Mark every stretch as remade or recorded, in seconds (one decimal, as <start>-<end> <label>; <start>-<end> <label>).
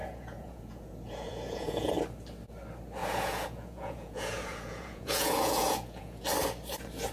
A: 0.0-1.9 remade; 1.9-3.0 recorded; 3.0-6.2 remade; 6.2-7.1 recorded